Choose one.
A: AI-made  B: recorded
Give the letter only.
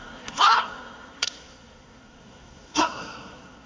A